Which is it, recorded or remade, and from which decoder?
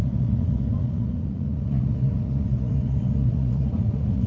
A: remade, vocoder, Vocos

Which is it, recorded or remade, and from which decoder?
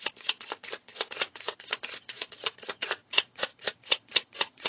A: remade, vocoder, Vocos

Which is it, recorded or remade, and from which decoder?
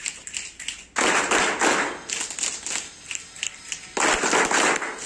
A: recorded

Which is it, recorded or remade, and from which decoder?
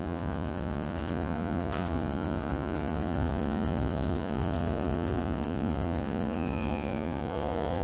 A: remade, vocoder, Vocos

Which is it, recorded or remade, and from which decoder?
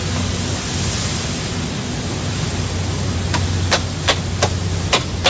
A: recorded